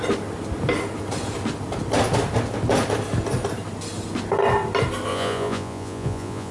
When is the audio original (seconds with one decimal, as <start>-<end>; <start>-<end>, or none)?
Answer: 0.0-5.1